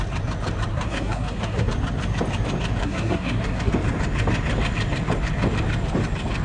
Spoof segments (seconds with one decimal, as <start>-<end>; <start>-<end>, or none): 0.7-1.7; 2.8-3.7